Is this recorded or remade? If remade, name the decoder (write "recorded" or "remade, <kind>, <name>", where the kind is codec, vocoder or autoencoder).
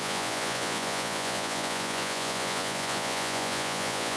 remade, vocoder, Vocos